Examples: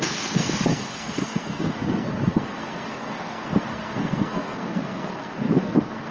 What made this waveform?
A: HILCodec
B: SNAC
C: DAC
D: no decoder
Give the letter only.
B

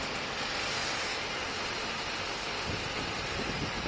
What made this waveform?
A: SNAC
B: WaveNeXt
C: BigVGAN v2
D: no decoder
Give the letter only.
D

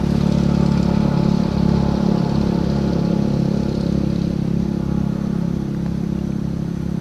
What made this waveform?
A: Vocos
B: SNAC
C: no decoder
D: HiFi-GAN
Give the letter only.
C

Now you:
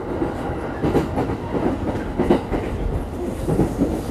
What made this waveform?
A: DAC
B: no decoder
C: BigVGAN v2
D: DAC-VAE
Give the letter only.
B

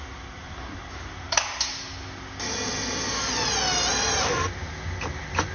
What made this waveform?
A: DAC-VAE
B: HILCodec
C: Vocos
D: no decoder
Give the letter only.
D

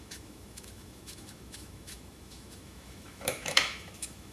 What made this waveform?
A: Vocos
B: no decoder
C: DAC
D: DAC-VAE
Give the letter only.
D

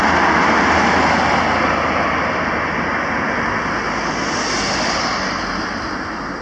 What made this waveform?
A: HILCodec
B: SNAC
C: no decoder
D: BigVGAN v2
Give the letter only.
C